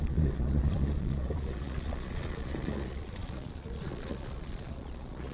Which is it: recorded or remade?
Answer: remade